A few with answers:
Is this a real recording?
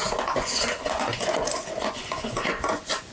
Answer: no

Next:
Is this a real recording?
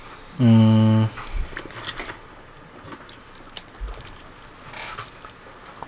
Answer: yes